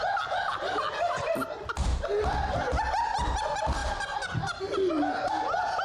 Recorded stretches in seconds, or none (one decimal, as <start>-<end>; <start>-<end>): 0.0-5.8